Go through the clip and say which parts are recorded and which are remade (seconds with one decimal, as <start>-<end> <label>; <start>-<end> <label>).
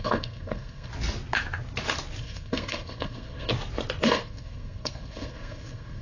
0.0-0.9 remade; 0.9-2.2 recorded; 2.2-3.5 remade; 3.5-4.0 recorded; 4.0-6.0 remade